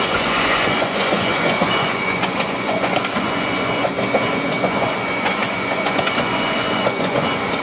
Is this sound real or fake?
fake